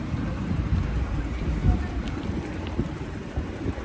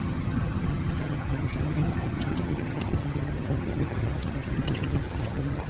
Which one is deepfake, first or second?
second